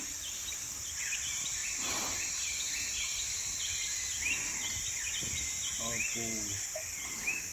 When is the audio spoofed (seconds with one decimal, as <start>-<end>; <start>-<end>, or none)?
1.6-2.6